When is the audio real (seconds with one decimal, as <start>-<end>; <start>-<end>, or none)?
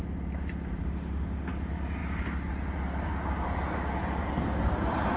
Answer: 0.0-0.8; 1.5-5.2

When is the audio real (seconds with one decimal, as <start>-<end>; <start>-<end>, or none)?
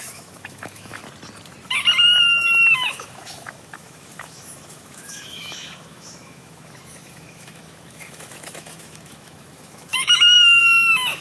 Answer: 1.0-2.7